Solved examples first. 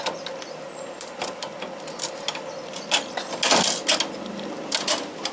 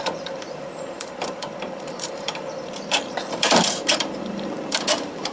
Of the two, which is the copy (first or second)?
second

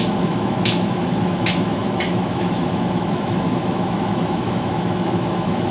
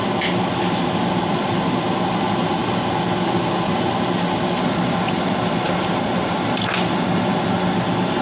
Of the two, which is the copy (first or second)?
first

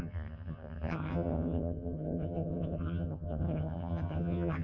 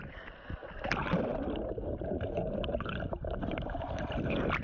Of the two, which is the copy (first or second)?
first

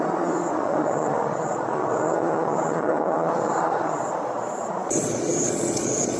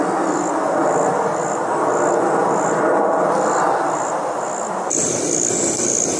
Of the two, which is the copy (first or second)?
first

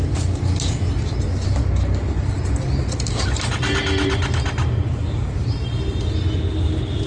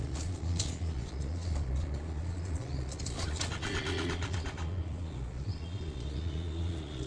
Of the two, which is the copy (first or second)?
second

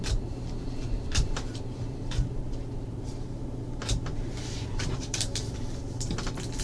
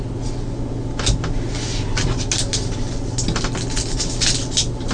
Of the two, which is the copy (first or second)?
first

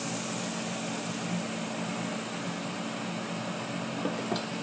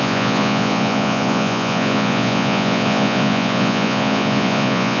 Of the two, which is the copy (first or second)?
second